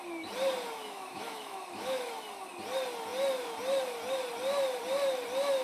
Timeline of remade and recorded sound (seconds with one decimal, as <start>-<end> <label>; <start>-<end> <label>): 0.0-0.8 recorded; 0.8-2.1 remade; 2.1-5.6 recorded